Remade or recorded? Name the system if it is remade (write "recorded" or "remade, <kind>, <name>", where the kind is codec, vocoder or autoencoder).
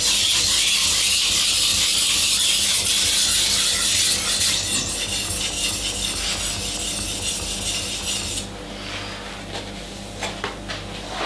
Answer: recorded